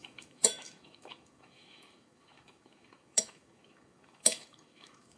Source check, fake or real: fake